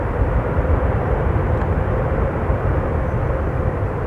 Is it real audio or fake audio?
fake